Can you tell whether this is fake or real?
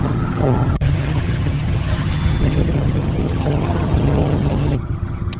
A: fake